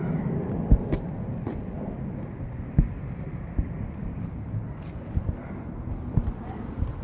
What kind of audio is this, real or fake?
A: real